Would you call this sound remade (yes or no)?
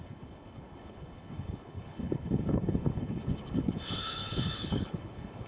yes